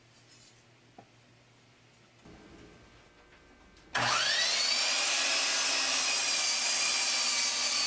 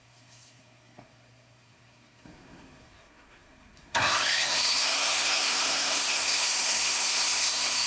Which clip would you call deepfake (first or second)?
second